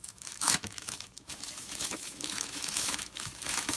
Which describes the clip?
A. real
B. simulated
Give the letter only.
B